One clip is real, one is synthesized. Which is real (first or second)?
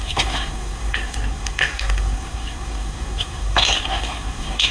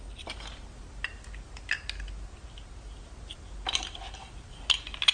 second